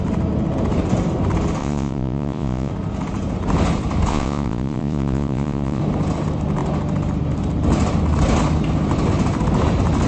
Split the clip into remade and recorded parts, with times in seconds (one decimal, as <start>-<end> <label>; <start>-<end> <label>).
0.0-1.6 recorded; 1.6-2.7 remade; 2.7-4.1 recorded; 4.1-5.8 remade; 5.8-10.1 recorded